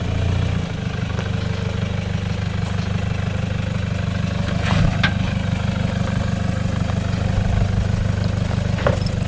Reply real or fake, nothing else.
real